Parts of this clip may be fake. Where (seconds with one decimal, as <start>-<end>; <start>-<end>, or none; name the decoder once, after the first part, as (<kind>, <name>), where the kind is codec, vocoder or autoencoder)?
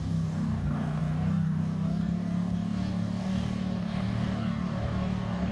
0.0-5.5 (codec, DAC)